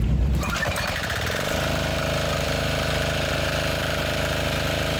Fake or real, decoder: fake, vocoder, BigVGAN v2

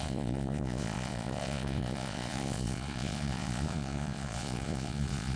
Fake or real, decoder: fake, vocoder, Vocos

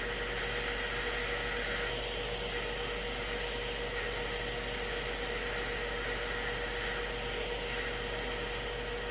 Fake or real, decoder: real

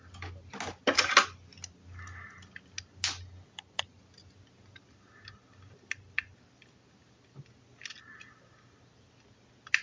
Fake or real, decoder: real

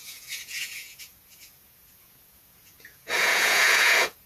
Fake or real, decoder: fake, vocoder, Vocos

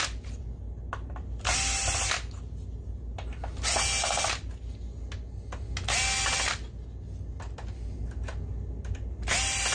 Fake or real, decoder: real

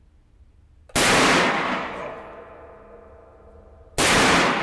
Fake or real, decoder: real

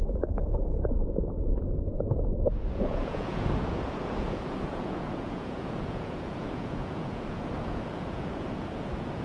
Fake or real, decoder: fake, vocoder, Vocos